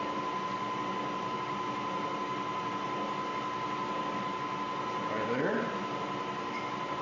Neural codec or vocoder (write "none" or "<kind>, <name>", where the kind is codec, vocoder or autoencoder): none